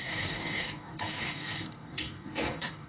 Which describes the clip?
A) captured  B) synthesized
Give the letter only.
B